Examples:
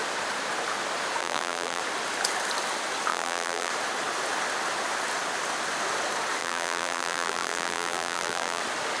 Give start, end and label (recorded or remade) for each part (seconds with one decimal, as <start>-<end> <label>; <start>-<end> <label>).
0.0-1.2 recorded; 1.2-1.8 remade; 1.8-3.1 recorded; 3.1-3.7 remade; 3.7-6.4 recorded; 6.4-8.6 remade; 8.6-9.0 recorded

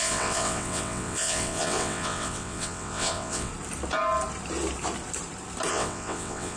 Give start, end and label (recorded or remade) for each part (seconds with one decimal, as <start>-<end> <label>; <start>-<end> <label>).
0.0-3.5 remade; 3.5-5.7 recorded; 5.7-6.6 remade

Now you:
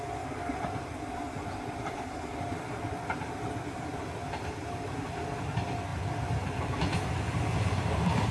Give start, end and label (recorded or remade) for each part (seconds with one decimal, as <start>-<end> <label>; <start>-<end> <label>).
0.0-8.3 recorded

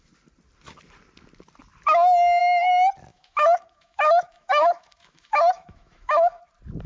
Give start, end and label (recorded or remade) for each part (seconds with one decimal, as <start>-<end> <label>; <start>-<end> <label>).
0.0-3.1 recorded; 3.1-6.4 remade; 6.4-6.9 recorded

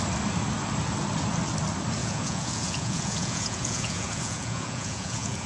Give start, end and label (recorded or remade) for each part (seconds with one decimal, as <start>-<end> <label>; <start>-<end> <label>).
0.0-2.0 recorded; 2.0-5.5 remade

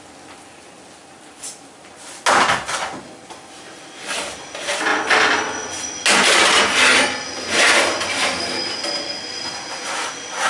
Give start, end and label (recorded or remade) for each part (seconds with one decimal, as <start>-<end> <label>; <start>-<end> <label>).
0.0-10.5 recorded

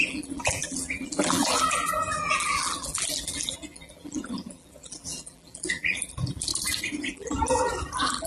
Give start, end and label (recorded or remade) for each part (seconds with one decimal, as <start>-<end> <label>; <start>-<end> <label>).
0.0-6.5 remade; 6.5-7.1 recorded; 7.1-8.3 remade